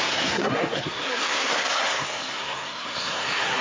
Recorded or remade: remade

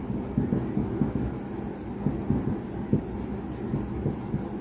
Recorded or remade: recorded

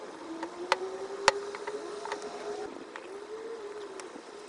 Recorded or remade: recorded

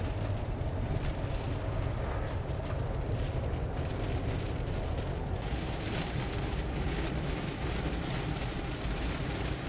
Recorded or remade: recorded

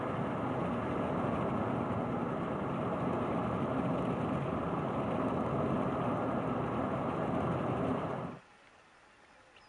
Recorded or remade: recorded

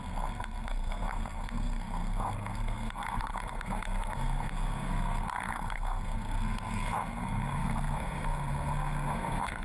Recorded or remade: remade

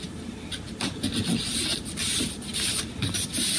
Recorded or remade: recorded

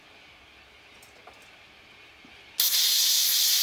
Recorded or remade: recorded